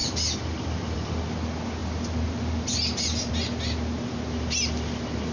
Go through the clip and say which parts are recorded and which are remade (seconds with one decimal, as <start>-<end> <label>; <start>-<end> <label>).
0.0-1.1 remade; 1.1-5.3 recorded